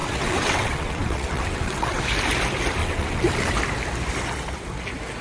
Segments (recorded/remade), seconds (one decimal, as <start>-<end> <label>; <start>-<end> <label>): 0.0-2.0 remade; 2.0-2.8 recorded; 2.8-3.5 remade; 3.5-5.2 recorded